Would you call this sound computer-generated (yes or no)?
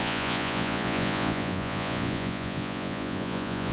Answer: yes